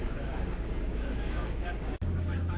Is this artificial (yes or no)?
yes